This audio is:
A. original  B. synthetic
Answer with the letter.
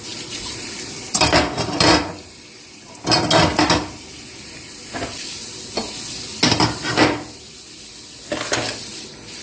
A